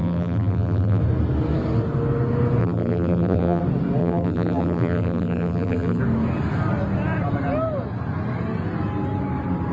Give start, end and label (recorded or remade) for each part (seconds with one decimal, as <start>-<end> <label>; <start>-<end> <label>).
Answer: 0.0-1.0 remade; 1.0-2.6 recorded; 2.6-3.6 remade; 3.6-4.0 recorded; 4.0-6.0 remade; 6.0-9.7 recorded